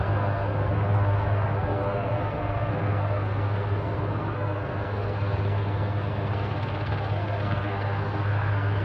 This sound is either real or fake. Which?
fake